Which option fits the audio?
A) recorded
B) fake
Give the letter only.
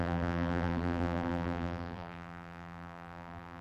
B